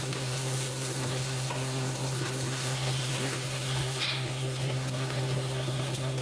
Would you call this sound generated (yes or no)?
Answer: yes